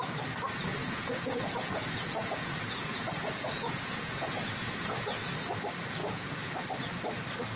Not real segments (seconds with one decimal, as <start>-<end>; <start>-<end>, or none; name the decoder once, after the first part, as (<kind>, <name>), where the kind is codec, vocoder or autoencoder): 0.8-5.2 (vocoder, Vocos); 6.0-6.5